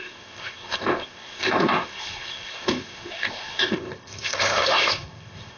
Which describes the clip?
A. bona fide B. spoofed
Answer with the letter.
B